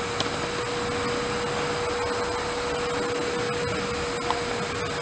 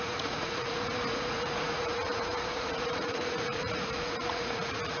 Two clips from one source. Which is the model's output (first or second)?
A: second